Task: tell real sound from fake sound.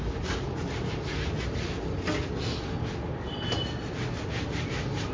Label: real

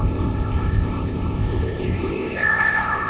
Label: fake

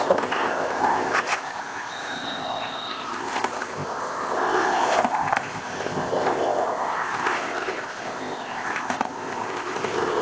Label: fake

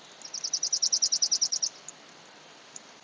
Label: real